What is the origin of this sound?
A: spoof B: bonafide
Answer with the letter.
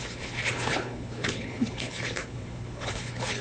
A